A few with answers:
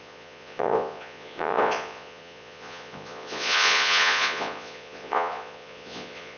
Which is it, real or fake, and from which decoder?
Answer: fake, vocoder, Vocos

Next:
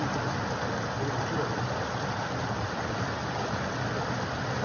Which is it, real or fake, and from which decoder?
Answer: real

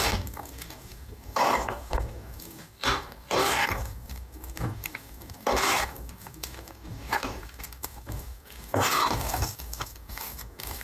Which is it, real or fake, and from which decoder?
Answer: fake, codec, DAC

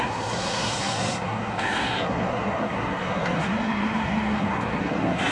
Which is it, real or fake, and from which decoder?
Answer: fake, codec, SNAC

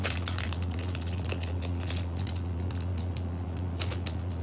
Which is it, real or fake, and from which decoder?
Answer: fake, vocoder, Vocos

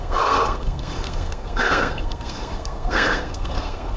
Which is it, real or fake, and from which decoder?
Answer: fake, codec, SNAC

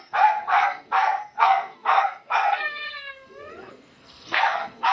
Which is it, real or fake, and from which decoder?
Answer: fake, codec, SNAC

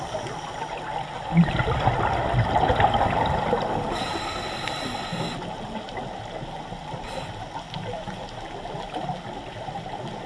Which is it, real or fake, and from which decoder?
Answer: real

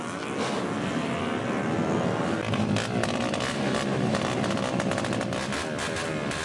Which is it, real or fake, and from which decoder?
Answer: real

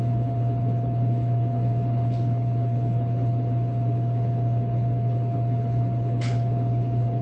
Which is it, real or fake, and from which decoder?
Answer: fake, codec, HILCodec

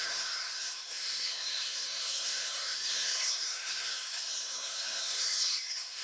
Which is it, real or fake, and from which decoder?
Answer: fake, codec, SNAC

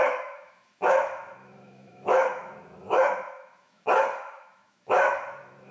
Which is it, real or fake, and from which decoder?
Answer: fake, autoencoder, DAC-VAE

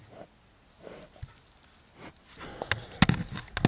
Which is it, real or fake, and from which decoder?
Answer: real